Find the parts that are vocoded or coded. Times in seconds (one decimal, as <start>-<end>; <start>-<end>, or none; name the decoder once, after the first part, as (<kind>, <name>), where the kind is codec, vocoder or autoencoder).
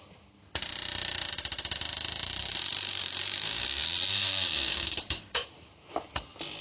2.4-5.7 (codec, DAC)